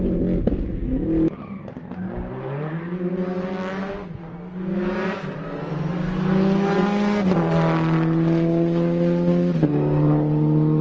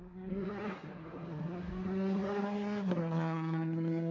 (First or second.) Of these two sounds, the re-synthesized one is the second